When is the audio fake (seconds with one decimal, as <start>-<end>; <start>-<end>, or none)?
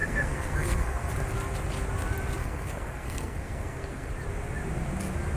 0.0-1.1; 2.4-4.1